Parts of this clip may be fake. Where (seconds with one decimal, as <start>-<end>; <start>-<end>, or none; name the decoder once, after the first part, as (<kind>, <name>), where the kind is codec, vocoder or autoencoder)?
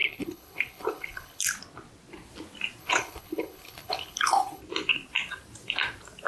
0.0-1.4 (codec, HILCodec); 2.8-4.6